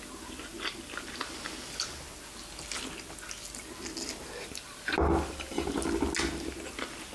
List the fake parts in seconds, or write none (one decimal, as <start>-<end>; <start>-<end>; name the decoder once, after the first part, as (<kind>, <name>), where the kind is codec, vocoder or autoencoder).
none

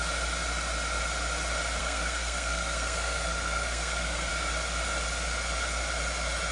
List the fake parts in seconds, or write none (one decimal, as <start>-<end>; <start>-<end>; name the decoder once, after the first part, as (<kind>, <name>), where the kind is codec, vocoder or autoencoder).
1.8-4.3 (codec, SNAC)

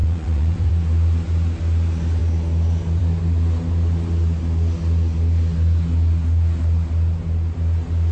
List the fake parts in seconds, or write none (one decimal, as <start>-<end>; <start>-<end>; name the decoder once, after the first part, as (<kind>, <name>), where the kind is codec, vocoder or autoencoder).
0.0-0.7 (vocoder, Vocos)

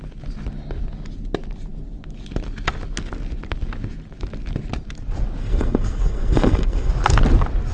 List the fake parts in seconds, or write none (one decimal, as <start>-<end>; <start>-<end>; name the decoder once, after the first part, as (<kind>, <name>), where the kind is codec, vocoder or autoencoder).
5.4-6.9 (codec, SNAC)